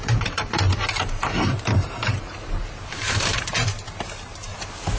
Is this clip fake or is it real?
fake